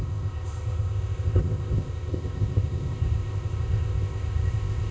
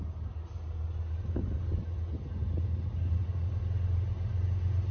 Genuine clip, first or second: second